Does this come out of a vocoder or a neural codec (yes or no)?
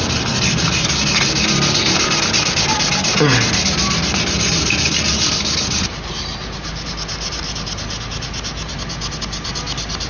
no